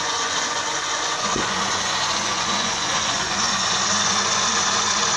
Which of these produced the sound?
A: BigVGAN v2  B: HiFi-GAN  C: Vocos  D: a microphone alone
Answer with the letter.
C